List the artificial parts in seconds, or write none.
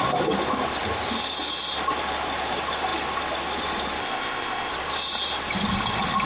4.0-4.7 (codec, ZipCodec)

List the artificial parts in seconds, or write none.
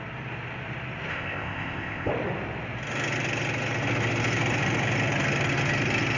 1.1-2.1 (codec, ZipCodec)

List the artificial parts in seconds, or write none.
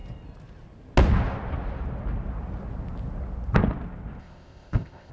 4.2-5.1 (codec, ZipCodec)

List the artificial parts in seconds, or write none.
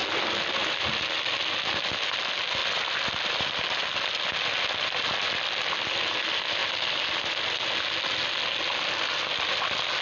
none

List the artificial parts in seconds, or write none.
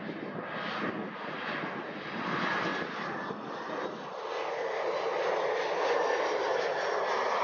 none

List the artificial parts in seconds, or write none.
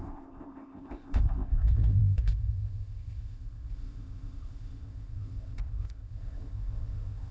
0.0-7.3 (codec, ZipCodec)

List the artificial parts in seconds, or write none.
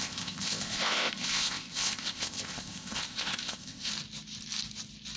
0.0-3.9 (codec, ZipCodec)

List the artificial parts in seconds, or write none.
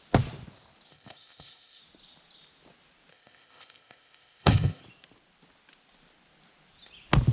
0.9-1.8 (codec, ZipCodec); 3.1-4.8